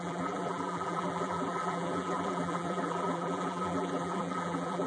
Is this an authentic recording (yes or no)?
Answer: no